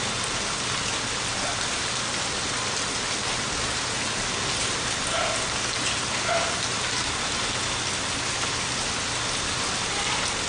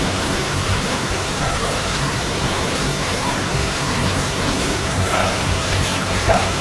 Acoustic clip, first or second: first